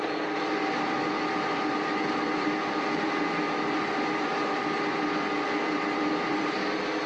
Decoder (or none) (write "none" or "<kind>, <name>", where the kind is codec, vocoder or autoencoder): none